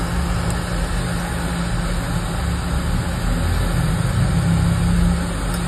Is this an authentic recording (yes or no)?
yes